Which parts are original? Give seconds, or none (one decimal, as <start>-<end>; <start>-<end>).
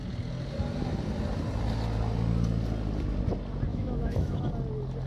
0.0-3.7; 4.5-5.1